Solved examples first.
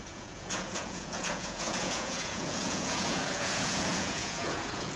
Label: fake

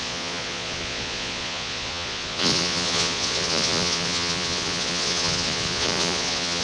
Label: fake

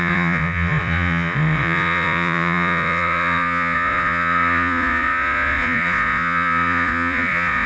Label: fake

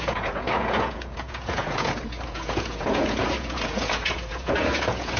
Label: fake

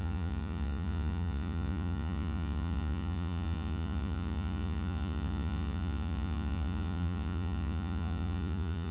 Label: fake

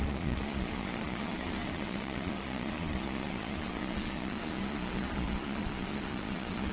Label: fake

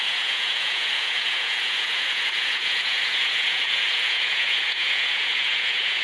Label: fake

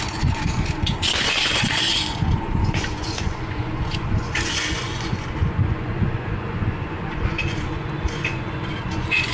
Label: fake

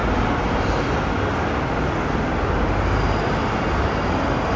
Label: real